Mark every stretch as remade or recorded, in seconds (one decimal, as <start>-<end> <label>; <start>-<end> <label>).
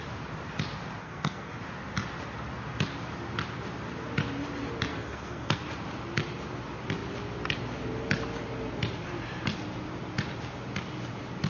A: 0.0-1.0 recorded; 1.0-1.6 remade; 1.6-4.9 recorded; 4.9-5.6 remade; 5.6-11.5 recorded